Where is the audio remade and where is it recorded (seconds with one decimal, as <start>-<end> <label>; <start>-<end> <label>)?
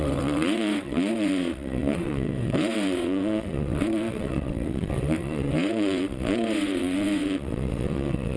0.0-8.4 remade